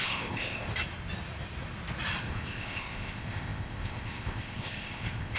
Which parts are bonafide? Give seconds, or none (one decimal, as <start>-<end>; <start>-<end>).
0.7-2.2